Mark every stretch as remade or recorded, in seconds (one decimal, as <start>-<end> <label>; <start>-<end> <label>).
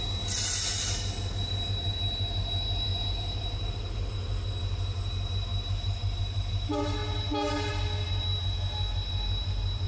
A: 0.0-9.9 recorded